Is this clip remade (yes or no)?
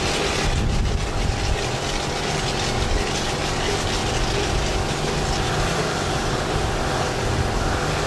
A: no